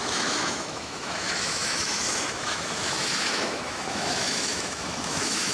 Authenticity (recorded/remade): remade